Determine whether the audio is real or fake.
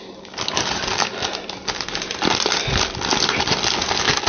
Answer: real